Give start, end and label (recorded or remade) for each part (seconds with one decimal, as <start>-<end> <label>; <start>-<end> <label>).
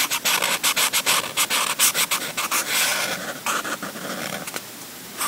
0.0-5.3 recorded